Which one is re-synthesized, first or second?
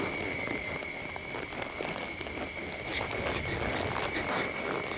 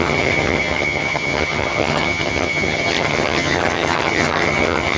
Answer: second